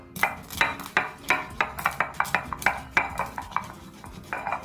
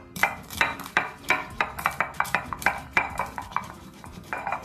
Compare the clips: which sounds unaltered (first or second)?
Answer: first